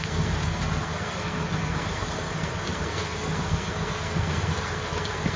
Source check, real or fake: fake